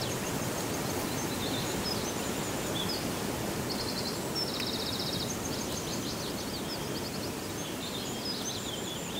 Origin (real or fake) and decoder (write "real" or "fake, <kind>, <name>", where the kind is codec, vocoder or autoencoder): real